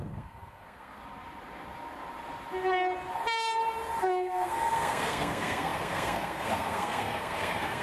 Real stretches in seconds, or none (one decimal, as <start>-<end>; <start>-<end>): 1.0-4.0